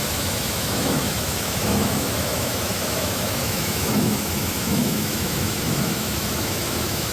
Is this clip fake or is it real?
fake